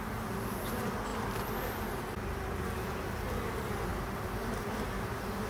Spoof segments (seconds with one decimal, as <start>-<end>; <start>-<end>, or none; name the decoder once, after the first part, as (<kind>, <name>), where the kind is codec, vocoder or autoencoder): none